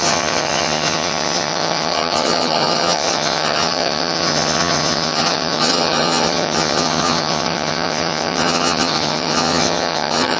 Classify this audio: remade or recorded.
remade